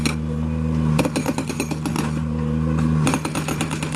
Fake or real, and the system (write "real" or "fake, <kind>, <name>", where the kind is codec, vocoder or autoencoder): real